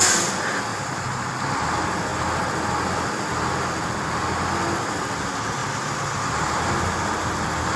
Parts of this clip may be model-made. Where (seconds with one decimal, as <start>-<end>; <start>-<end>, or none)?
0.7-1.3; 5.6-6.7